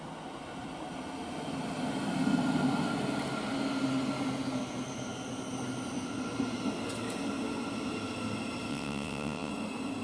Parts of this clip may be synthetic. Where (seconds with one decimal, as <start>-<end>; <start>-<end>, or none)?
8.7-9.5